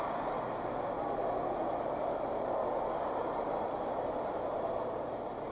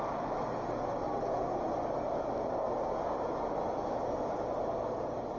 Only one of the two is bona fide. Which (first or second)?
second